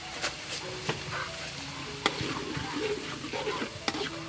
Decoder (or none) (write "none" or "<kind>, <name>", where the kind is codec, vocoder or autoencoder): none